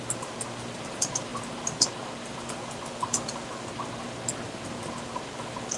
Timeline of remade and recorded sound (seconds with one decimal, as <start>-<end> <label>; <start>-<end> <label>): 0.0-5.8 recorded